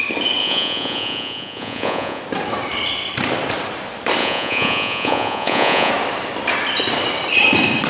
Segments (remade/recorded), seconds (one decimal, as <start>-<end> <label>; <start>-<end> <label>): 0.0-0.4 recorded; 0.4-2.2 remade; 2.2-4.2 recorded; 4.2-5.9 remade; 5.9-7.9 recorded